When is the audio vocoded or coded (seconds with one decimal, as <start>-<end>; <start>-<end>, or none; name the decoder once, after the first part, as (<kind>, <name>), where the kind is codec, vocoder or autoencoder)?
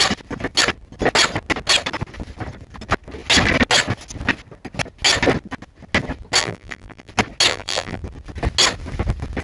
6.4-7.1 (vocoder, BigVGAN v2); 7.5-8.0